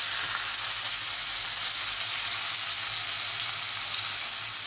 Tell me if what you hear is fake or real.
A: real